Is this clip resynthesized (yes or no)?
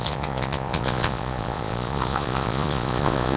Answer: yes